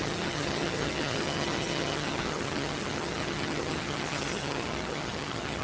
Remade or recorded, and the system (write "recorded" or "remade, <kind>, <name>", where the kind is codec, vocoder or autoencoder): remade, vocoder, HiFi-GAN